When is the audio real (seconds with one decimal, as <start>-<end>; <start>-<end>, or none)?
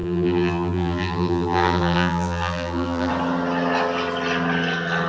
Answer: 3.1-5.1